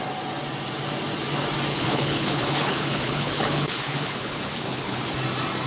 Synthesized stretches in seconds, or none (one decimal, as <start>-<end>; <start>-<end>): 1.7-5.1